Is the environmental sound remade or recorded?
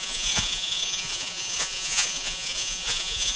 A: remade